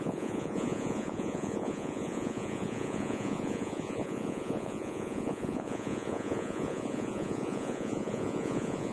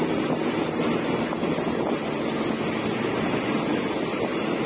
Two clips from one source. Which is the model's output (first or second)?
first